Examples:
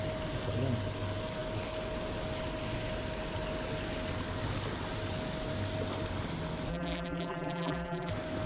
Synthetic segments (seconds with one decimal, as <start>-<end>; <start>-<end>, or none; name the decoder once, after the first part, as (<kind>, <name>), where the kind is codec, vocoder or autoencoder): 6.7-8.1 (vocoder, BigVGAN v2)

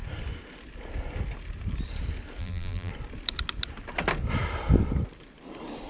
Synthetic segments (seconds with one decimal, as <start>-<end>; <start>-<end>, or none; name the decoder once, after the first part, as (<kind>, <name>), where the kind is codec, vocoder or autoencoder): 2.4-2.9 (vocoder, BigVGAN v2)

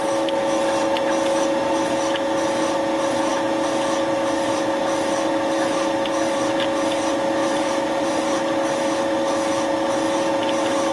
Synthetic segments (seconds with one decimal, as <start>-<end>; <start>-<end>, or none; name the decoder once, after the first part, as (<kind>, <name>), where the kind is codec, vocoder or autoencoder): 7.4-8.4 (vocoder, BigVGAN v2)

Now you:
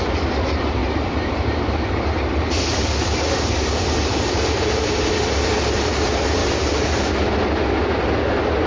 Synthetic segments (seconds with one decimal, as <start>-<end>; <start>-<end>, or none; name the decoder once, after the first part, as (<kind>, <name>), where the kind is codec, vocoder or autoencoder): 0.8-5.1 (vocoder, BigVGAN v2); 6.4-6.9

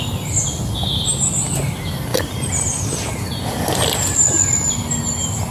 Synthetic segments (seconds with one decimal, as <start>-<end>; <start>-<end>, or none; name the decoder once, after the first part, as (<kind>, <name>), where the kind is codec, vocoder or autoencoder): 2.1-5.5 (vocoder, BigVGAN v2)

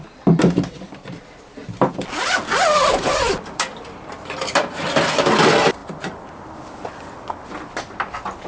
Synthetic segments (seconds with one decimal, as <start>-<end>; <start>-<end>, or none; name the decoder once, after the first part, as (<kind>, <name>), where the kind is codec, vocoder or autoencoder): 0.0-1.6 (vocoder, BigVGAN v2); 3.3-8.5